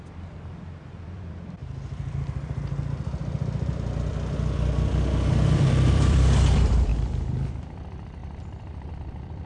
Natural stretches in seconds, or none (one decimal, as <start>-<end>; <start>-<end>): 1.6-5.9; 6.9-7.5

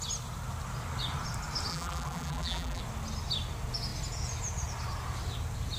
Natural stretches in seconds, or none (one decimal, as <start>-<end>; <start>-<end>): 0.0-1.7; 2.8-5.8

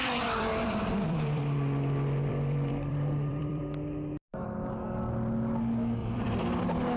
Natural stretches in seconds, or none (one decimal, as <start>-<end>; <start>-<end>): 3.6-6.0; 6.6-7.0

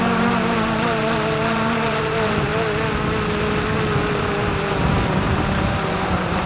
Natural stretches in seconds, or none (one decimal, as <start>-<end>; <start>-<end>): 2.5-4.1